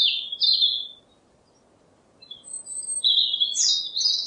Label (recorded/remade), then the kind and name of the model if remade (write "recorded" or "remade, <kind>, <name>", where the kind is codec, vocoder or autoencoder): recorded